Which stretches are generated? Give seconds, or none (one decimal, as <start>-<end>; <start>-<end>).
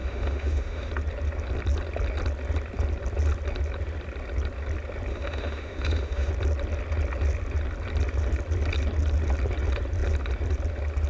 0.0-0.9; 5.1-6.3